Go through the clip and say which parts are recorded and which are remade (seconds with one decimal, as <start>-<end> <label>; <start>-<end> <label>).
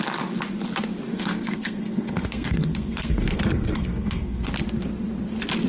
0.0-1.1 recorded; 1.1-4.5 remade; 4.5-5.7 recorded